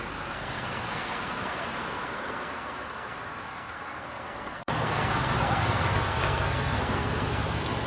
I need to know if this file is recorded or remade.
remade